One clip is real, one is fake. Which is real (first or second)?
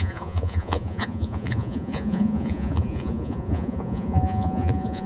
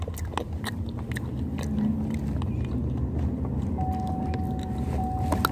second